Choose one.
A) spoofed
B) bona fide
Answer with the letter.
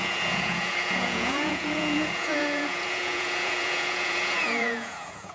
A